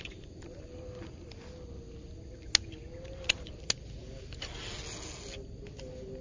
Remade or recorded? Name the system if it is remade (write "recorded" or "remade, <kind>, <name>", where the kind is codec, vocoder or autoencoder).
recorded